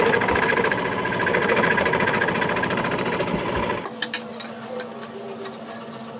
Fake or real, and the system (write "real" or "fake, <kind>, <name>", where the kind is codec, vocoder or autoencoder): real